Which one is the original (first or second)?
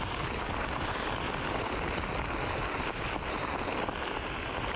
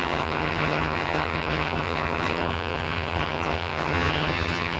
first